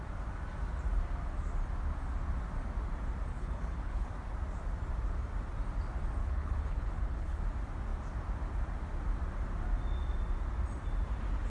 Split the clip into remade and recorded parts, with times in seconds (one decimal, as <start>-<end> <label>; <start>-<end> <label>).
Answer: 0.0-3.3 recorded; 3.3-4.1 remade; 4.1-6.2 recorded; 6.2-7.4 remade; 7.4-11.5 recorded